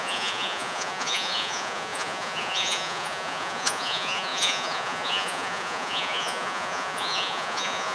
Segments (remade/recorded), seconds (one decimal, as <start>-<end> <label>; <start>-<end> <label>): 0.0-7.9 remade